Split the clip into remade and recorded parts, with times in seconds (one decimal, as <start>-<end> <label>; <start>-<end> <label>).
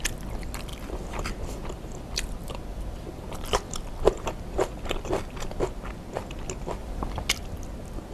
0.0-0.7 recorded; 0.7-5.6 remade; 5.6-6.8 recorded; 6.8-7.3 remade; 7.3-8.1 recorded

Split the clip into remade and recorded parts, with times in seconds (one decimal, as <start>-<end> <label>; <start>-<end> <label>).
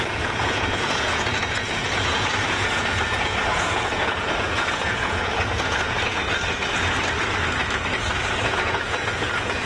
0.0-6.2 remade; 6.2-8.5 recorded; 8.5-9.7 remade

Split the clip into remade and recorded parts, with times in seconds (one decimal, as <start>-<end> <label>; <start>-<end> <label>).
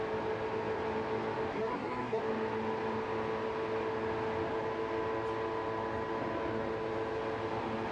0.0-1.5 recorded; 1.5-2.2 remade; 2.2-7.9 recorded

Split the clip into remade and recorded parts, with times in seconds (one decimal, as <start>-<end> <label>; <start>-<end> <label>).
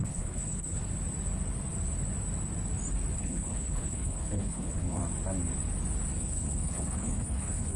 0.0-0.8 remade; 0.8-3.1 recorded; 3.1-5.0 remade; 5.0-6.2 recorded; 6.2-7.8 remade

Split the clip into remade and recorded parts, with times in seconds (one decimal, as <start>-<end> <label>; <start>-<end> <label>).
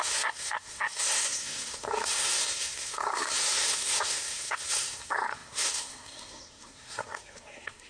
0.0-7.9 remade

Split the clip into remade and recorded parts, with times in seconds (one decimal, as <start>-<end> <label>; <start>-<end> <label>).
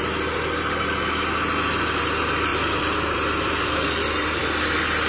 0.0-2.5 recorded; 2.5-4.4 remade; 4.4-5.1 recorded